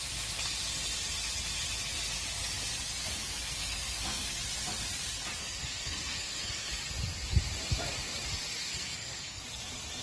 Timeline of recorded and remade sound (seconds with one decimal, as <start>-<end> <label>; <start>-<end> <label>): 0.0-3.0 recorded; 3.0-4.4 remade; 4.4-5.4 recorded; 5.4-6.7 remade; 6.7-8.7 recorded; 8.7-9.4 remade; 9.4-10.0 recorded